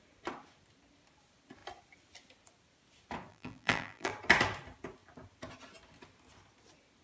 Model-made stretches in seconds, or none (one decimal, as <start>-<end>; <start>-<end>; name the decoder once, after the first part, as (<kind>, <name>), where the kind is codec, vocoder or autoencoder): 3.3-4.1 (vocoder, BigVGAN v2)